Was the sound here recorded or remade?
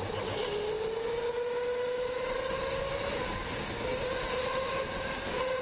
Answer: recorded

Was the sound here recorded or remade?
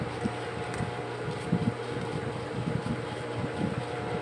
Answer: recorded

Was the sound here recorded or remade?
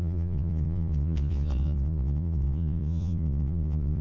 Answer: remade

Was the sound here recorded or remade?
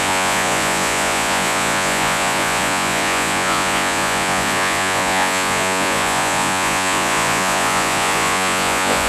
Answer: remade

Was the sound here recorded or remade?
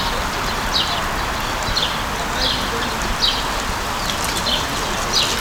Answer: recorded